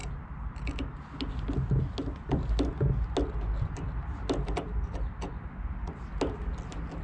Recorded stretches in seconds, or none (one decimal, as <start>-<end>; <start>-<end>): 0.0-7.0